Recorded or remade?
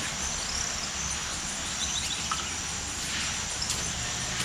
recorded